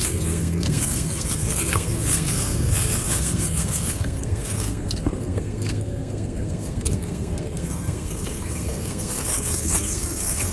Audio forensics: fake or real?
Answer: fake